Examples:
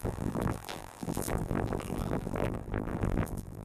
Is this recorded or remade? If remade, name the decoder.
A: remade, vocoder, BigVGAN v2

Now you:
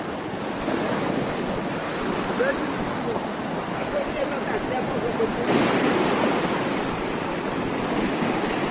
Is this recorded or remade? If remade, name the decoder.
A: remade, vocoder, BigVGAN v2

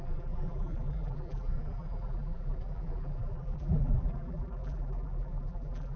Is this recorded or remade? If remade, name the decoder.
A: remade, vocoder, BigVGAN v2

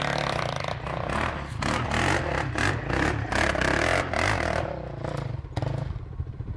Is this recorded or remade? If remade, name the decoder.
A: recorded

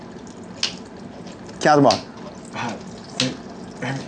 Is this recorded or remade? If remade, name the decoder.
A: recorded